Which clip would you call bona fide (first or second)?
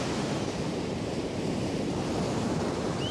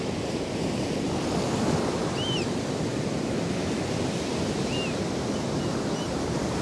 second